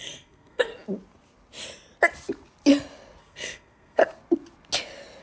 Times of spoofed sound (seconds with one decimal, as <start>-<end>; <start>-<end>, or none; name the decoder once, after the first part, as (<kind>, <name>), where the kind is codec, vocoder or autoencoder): 0.0-0.7 (codec, SNAC); 3.2-4.0